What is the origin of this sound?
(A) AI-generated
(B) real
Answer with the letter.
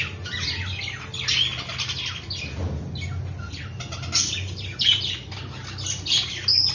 B